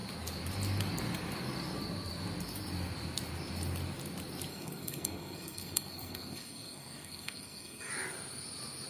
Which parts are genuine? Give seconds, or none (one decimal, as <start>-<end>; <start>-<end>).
0.0-4.5; 7.9-8.9